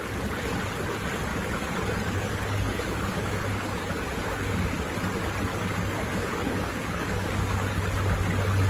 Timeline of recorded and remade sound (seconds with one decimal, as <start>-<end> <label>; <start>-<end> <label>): 0.0-1.3 recorded; 1.3-4.7 remade; 4.7-5.5 recorded; 5.5-7.7 remade; 7.7-8.7 recorded